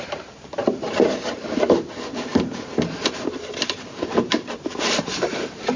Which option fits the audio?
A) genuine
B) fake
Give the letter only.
B